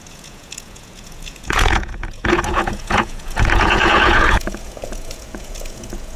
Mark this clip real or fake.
fake